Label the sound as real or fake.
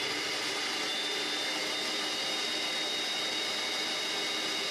real